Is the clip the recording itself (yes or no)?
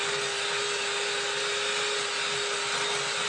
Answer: yes